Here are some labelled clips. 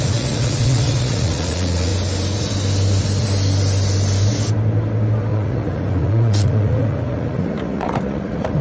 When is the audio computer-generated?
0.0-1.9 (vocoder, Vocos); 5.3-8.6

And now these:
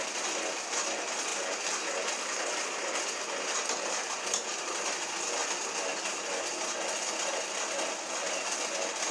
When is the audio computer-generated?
none

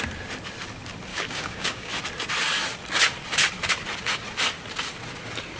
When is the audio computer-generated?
1.1-1.9 (codec, DAC)

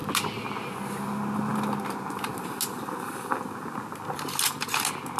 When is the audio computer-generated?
none

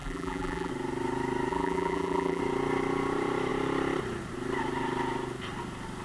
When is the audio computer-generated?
0.0-0.7 (vocoder, BigVGAN v2); 1.5-2.4